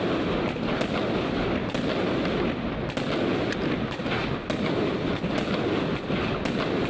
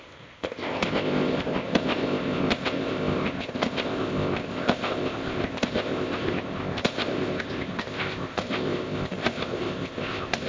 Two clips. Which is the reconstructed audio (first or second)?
second